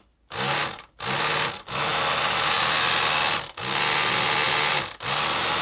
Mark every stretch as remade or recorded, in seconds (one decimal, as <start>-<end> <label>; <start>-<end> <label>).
0.0-5.6 recorded